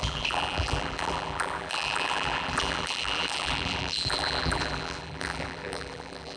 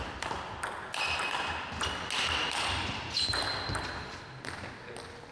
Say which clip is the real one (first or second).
second